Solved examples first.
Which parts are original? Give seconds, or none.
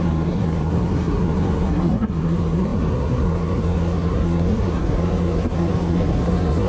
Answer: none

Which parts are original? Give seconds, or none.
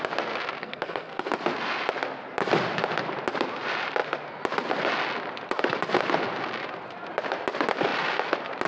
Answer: 0.0-0.6; 1.3-8.7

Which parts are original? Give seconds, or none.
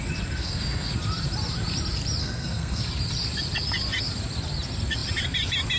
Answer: 0.0-0.4; 0.9-2.2; 2.8-5.8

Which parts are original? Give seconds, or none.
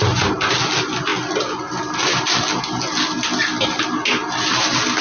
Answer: 0.0-5.0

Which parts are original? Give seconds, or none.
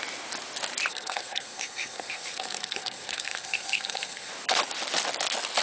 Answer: 0.0-0.9; 4.3-5.6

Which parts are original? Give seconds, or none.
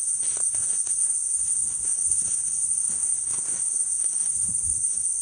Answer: none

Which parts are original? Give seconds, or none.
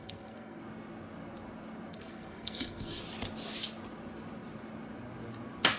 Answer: 0.6-1.9; 3.0-5.8